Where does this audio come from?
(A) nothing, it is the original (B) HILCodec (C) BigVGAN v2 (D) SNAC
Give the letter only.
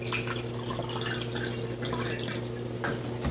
A